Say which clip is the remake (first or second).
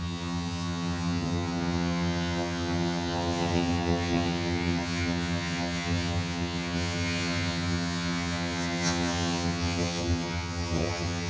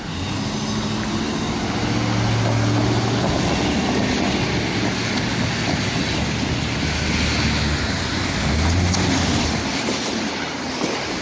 first